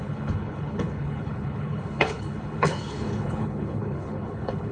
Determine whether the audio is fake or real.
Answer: fake